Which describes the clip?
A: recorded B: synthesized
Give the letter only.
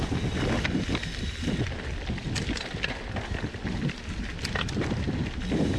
A